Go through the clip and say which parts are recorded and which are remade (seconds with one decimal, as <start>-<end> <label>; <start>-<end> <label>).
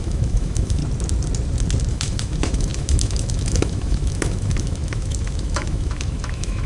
0.0-0.8 remade; 0.8-1.9 recorded; 1.9-6.7 remade